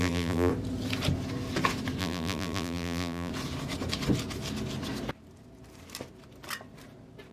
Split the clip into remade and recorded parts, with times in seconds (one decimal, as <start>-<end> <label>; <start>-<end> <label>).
0.0-0.5 remade; 0.5-2.0 recorded; 2.0-3.3 remade; 3.3-7.3 recorded